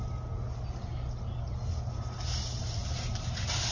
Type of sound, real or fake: real